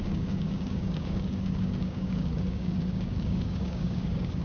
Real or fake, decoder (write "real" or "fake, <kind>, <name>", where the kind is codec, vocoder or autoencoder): fake, codec, DAC